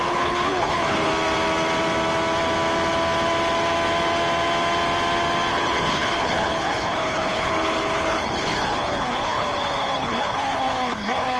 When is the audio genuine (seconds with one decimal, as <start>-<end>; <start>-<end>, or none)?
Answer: 1.1-5.5